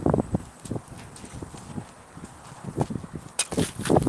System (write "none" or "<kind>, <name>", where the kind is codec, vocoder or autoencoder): none